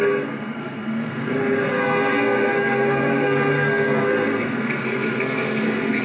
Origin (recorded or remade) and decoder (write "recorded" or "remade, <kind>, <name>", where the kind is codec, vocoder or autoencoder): remade, codec, SNAC